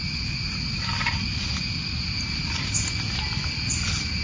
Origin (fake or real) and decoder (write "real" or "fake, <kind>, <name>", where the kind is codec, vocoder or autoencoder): real